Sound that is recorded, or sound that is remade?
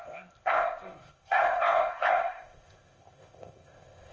remade